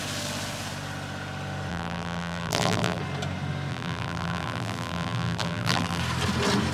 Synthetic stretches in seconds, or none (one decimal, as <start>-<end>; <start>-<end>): 1.7-3.0; 3.7-6.0